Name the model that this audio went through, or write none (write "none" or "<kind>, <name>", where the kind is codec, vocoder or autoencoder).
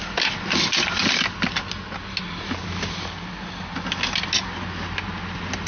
none